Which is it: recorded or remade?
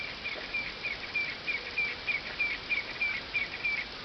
recorded